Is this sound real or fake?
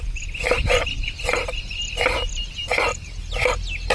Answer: real